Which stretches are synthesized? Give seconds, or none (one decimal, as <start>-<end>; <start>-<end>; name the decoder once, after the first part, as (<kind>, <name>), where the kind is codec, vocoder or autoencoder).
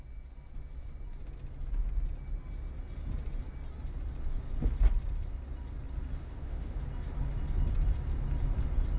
6.2-6.8 (autoencoder, DAC-VAE)